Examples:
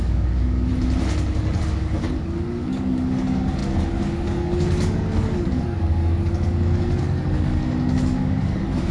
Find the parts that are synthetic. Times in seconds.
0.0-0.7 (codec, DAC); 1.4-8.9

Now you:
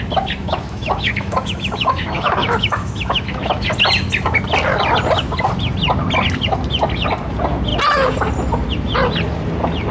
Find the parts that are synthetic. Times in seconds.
0.4-3.7 (autoencoder, DAC-VAE)

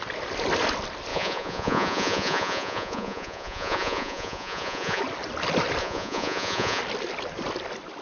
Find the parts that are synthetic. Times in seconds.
1.1-5.0 (vocoder, Vocos); 5.8-6.8

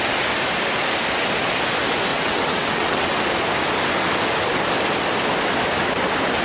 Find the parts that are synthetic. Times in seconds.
2.1-3.2 (vocoder, WaveNeXt)

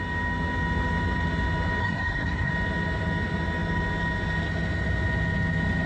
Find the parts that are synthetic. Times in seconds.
1.8-2.5 (codec, SNAC)

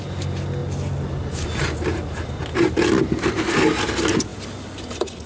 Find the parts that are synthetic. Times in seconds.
none